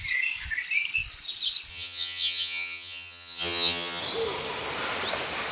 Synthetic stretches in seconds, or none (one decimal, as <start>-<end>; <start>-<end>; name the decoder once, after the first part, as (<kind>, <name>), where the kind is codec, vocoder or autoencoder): 1.7-4.0 (vocoder, HiFi-GAN)